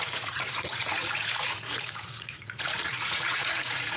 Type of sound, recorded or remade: remade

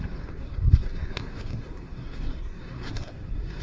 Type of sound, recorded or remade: remade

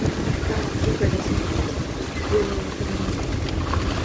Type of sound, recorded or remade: recorded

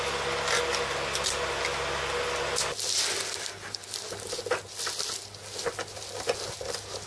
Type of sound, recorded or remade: recorded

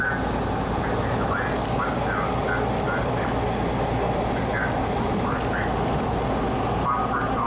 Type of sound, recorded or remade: recorded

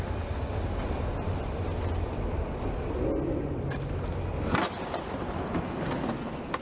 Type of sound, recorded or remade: recorded